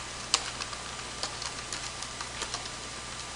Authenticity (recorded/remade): recorded